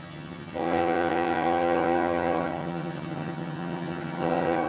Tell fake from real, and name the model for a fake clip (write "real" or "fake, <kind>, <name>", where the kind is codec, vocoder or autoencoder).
fake, vocoder, HiFi-GAN